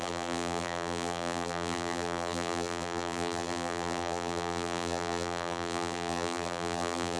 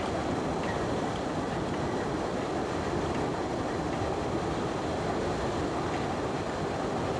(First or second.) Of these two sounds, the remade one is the first